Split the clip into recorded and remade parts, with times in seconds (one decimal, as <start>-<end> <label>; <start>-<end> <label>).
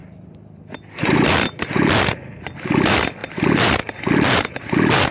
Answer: 0.0-5.1 recorded